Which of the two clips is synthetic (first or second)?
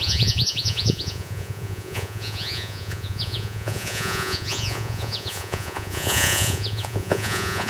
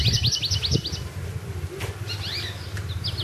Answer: first